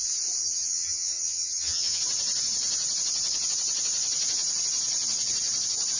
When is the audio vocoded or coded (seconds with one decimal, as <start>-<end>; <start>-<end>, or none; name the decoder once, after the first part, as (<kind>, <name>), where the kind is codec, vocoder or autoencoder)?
0.4-2.0 (vocoder, HiFi-GAN)